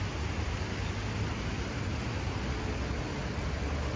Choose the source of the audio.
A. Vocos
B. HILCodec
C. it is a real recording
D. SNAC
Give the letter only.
C